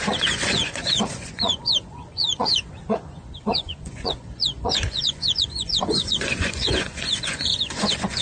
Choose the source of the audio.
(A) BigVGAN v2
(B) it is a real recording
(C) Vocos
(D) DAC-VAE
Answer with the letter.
C